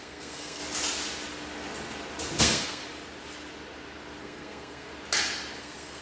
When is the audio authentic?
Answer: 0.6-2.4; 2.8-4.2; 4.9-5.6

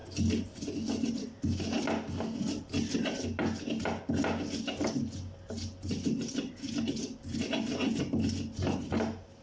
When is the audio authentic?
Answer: 0.0-9.4

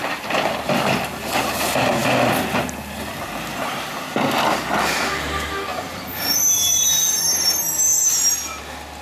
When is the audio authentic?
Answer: 0.0-3.5; 4.0-5.7; 6.4-9.0

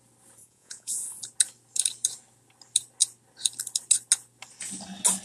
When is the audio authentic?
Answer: 0.0-0.4; 1.2-5.2